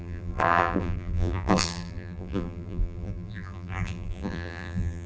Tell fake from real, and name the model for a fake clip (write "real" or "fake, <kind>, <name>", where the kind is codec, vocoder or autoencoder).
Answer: fake, vocoder, BigVGAN v2